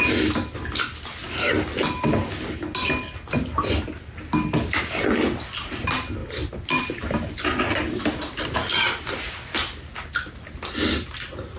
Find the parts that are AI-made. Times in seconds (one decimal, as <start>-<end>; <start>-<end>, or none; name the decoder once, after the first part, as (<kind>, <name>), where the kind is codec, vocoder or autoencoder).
none

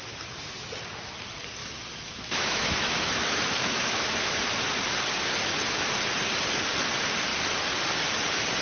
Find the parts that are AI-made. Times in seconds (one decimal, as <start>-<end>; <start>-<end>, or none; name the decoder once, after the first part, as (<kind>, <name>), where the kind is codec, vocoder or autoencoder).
1.6-4.3 (autoencoder, DAC-VAE)

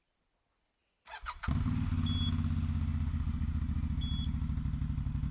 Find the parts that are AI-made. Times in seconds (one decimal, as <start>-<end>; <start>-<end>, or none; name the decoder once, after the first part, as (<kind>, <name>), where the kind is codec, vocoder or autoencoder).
none

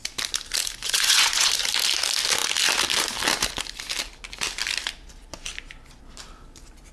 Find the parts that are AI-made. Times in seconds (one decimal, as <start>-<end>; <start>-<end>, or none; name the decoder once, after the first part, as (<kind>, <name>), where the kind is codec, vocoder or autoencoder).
0.8-1.5 (vocoder, Vocos)

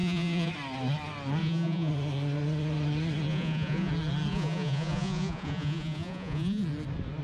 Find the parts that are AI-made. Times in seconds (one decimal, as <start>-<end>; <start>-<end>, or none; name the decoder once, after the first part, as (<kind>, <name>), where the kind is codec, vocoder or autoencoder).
0.0-0.5 (vocoder, Vocos); 1.4-1.9; 3.3-3.9; 4.3-6.6

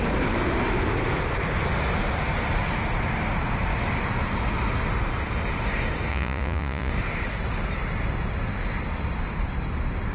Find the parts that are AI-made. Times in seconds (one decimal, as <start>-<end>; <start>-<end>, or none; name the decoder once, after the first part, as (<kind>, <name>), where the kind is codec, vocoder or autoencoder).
6.1-6.9 (vocoder, Vocos)